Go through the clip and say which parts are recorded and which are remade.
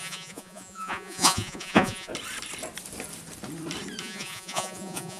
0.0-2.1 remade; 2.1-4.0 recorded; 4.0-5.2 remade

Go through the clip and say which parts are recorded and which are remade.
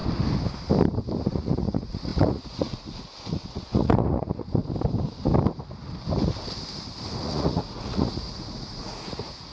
0.0-1.2 recorded; 1.2-4.6 remade; 4.6-7.2 recorded; 7.2-9.5 remade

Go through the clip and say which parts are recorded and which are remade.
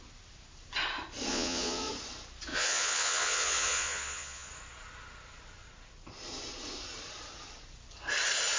0.0-1.3 recorded; 1.3-1.9 remade; 1.9-2.5 recorded; 2.5-4.5 remade; 4.5-8.6 recorded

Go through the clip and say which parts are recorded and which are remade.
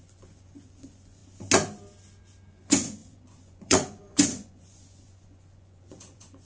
0.0-1.2 remade; 1.2-2.5 recorded; 2.5-6.4 remade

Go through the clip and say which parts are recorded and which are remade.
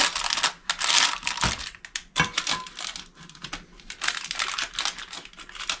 0.0-5.8 recorded